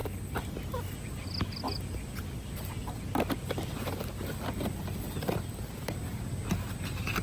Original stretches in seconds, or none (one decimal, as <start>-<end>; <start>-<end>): 0.0-7.2